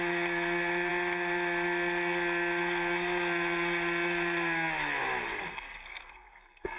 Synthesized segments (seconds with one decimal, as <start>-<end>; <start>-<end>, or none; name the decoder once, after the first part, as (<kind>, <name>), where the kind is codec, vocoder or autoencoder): 5.5-6.8 (codec, SNAC)